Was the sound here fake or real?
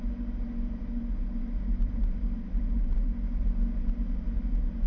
real